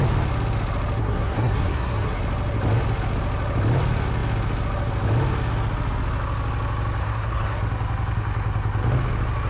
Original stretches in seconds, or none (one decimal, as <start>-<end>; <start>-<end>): 0.0-1.0; 2.2-7.0; 7.6-9.5